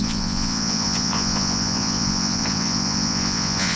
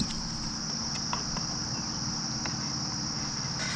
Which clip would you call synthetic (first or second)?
first